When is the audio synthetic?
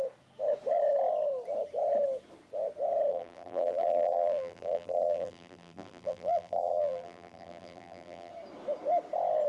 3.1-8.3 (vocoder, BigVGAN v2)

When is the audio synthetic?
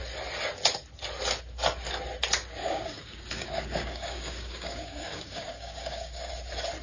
2.6-6.3 (codec, DAC)